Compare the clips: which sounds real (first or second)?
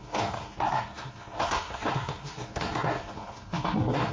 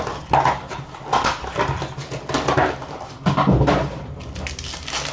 second